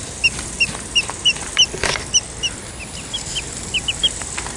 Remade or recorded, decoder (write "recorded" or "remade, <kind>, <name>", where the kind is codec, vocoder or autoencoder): recorded